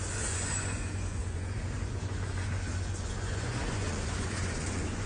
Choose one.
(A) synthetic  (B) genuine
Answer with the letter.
A